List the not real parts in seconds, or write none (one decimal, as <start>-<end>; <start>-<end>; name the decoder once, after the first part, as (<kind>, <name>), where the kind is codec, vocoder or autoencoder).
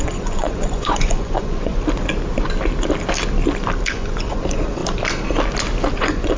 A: 0.0-1.7 (vocoder, Vocos); 3.9-4.8; 6.0-6.4